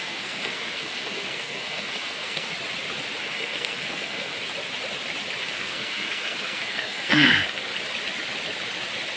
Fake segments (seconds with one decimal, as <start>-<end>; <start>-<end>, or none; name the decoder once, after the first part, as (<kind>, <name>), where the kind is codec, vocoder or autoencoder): 0.0-2.5 (codec, SNAC); 3.2-4.3; 5.4-7.7